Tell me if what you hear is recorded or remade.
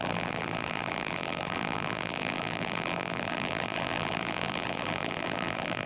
remade